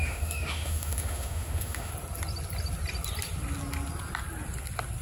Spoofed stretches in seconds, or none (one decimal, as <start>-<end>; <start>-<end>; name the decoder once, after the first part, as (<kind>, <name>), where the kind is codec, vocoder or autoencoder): 0.0-1.9 (autoencoder, DAC-VAE)